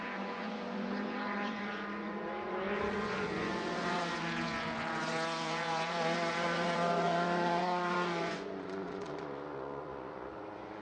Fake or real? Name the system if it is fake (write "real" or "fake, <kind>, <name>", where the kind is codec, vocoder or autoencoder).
fake, vocoder, Vocos